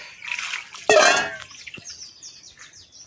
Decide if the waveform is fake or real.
real